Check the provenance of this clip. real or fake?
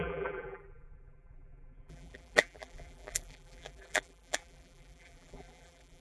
fake